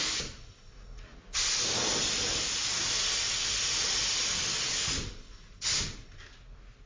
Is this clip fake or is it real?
real